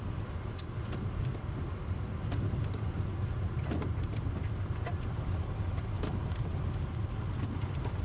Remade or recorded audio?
recorded